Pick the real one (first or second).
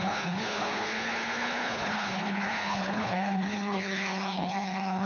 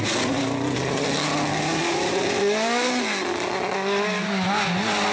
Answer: second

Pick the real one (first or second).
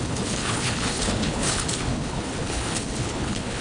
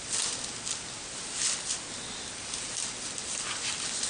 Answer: second